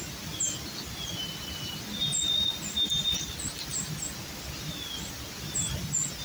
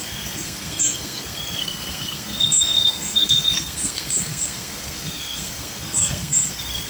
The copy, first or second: second